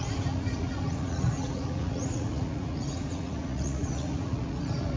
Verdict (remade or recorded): remade